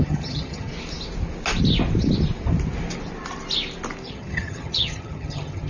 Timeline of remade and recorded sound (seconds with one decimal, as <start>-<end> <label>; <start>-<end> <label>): 0.0-0.7 remade; 0.7-4.1 recorded; 4.1-5.7 remade